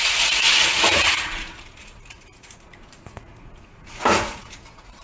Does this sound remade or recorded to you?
remade